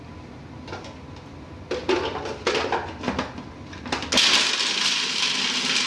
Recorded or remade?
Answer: recorded